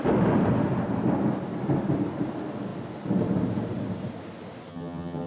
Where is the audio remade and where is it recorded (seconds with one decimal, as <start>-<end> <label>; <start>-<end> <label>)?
0.0-4.7 recorded; 4.7-5.3 remade